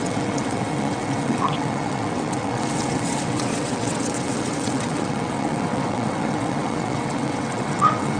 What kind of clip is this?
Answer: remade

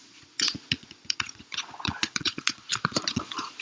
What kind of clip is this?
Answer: remade